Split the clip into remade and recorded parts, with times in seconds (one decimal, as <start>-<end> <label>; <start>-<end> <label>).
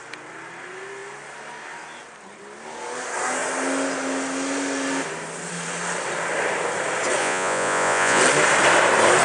0.0-7.2 recorded; 7.2-8.2 remade; 8.2-9.2 recorded